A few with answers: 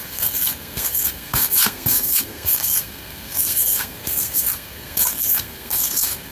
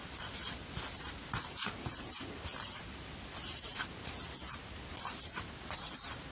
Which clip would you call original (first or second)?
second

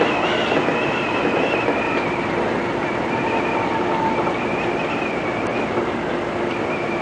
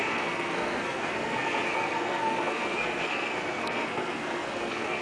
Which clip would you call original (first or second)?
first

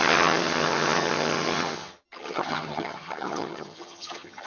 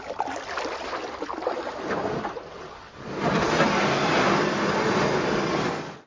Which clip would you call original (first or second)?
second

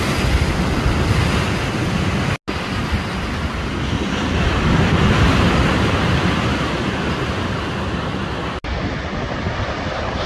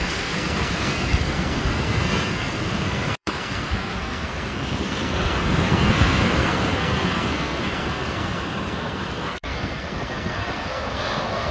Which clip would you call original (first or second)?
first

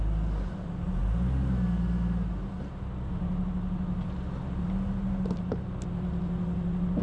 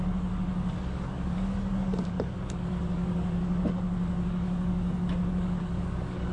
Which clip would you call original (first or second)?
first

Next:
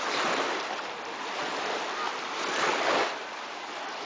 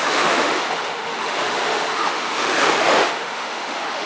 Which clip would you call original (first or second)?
first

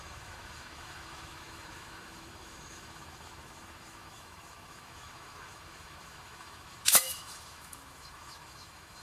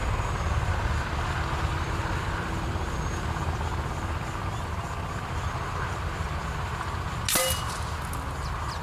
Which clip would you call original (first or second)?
second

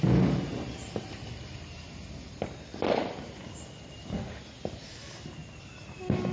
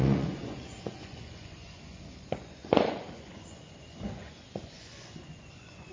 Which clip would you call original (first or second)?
first